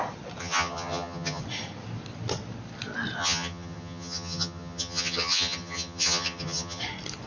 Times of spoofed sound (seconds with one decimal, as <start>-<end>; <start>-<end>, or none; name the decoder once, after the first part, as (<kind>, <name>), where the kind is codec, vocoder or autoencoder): 0.4-1.4 (vocoder, HiFi-GAN); 3.2-6.8